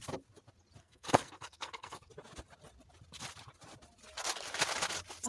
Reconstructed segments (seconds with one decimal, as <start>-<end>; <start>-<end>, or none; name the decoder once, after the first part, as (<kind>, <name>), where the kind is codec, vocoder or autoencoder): 0.8-2.1 (codec, SNAC)